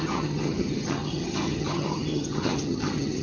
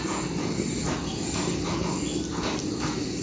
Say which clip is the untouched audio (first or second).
second